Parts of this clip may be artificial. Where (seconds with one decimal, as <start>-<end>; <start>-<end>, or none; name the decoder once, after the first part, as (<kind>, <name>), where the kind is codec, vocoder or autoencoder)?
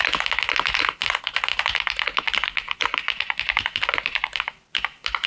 1.5-4.7 (vocoder, BigVGAN v2)